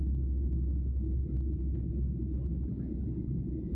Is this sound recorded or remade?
recorded